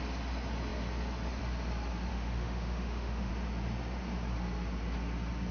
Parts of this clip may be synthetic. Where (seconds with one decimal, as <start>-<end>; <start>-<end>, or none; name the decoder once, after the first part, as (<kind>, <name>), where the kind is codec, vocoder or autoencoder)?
2.1-3.3 (autoencoder, DAC-VAE)